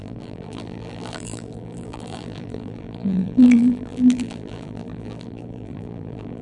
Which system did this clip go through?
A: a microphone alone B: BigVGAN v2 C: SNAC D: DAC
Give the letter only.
B